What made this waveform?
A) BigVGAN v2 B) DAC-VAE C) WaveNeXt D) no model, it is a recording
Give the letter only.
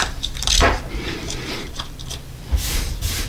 A